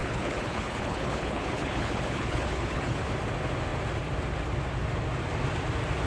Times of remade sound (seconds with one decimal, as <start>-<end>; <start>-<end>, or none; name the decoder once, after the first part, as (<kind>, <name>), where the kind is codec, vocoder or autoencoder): 0.0-3.0 (codec, HILCodec)